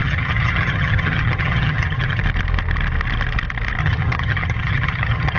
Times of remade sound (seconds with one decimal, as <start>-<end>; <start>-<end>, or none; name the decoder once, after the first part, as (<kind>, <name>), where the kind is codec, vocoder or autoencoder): 0.0-2.2 (vocoder, HiFi-GAN); 3.8-5.4